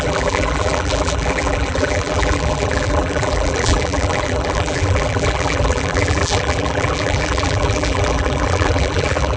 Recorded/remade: remade